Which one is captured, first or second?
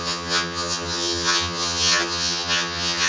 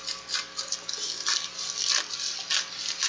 second